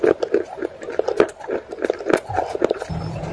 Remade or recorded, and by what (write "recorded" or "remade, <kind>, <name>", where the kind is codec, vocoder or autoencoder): recorded